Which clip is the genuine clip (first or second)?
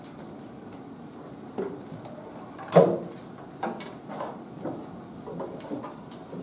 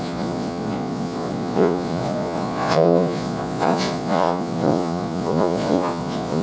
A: first